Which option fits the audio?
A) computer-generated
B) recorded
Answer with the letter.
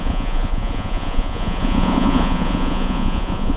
A